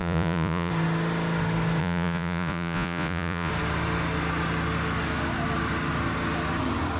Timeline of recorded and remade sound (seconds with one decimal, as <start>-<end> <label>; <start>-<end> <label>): 0.0-0.7 remade; 0.7-1.8 recorded; 1.8-3.5 remade; 3.5-7.0 recorded